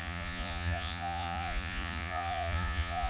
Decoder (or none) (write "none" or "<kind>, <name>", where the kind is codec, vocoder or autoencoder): vocoder, Vocos